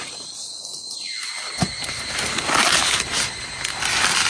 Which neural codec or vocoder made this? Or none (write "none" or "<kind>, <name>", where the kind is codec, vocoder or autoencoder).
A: none